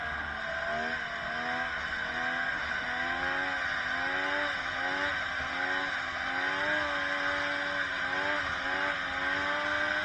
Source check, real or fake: real